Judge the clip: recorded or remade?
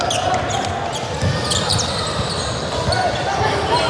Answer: recorded